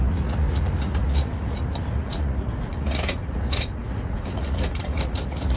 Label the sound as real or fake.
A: fake